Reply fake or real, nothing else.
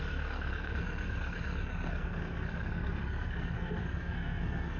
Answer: fake